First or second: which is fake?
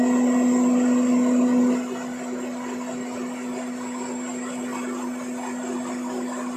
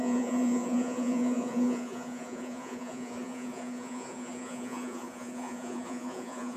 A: second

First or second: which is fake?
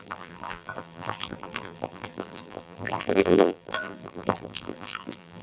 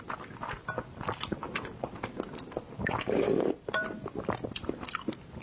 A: first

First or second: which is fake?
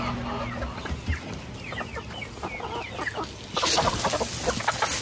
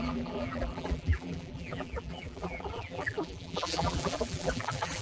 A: second